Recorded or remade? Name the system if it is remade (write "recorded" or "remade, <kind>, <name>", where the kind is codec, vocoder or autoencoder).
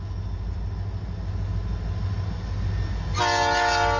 recorded